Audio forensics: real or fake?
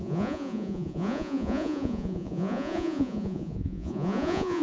fake